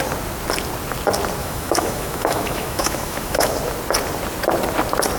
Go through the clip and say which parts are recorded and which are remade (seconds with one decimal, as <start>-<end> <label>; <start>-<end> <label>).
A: 0.0-1.4 recorded; 1.4-3.5 remade; 3.5-5.2 recorded